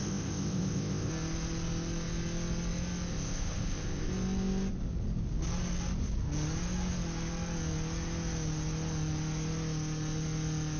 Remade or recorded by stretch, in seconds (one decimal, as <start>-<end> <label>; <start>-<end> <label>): 0.0-1.1 remade; 1.1-3.1 recorded; 3.1-4.1 remade; 4.1-10.8 recorded